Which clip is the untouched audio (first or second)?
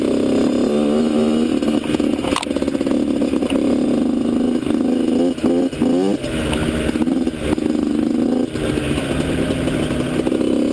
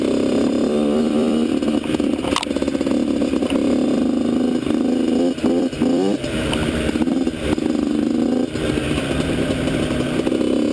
first